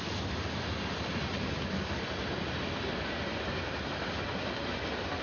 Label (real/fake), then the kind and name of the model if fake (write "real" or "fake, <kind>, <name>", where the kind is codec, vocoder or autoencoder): real